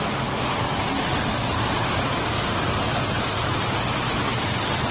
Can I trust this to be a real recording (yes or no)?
yes